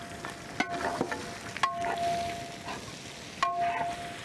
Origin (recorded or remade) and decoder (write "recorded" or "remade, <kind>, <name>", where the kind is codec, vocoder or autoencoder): recorded